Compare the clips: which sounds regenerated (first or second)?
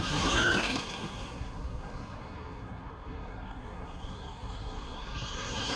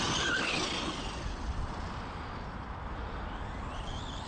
first